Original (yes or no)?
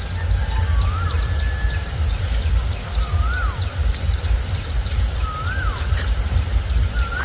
yes